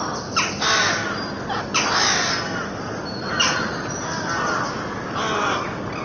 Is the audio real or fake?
real